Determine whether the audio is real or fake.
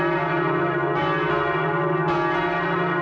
real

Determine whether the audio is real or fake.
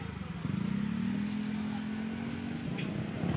real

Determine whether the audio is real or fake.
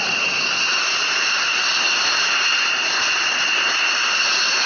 real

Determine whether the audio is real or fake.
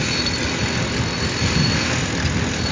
real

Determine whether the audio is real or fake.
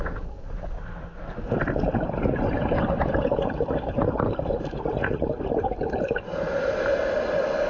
real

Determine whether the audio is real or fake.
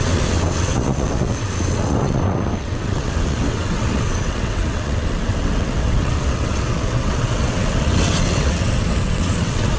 fake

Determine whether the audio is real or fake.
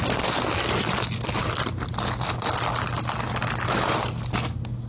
real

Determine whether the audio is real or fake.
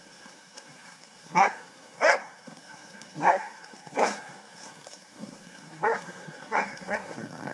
fake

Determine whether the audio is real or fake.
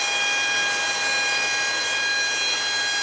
real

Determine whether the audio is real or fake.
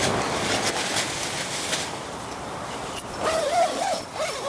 real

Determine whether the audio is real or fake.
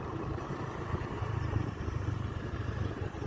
real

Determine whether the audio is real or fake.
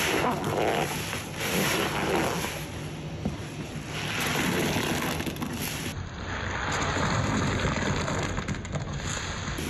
real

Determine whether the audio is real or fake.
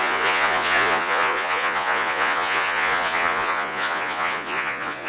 fake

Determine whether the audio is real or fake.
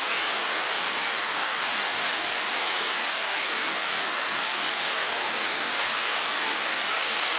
fake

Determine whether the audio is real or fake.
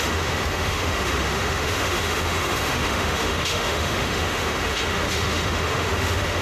fake